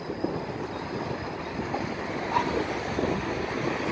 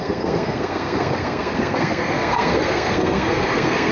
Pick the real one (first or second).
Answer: first